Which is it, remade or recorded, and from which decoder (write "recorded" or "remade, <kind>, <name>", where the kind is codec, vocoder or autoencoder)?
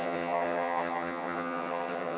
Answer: remade, vocoder, HiFi-GAN